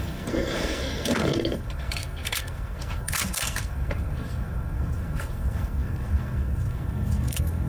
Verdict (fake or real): fake